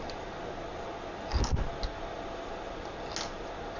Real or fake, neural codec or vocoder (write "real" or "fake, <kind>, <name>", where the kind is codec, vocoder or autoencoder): real